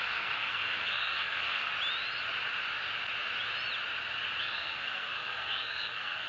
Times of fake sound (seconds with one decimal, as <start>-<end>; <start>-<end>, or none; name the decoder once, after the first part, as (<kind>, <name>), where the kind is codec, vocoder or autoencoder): 0.0-1.7 (codec, SNAC); 4.4-6.3